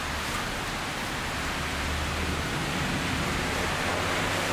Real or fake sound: real